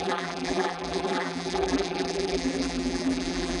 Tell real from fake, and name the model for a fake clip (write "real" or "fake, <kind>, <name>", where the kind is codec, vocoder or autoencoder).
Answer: fake, vocoder, BigVGAN v2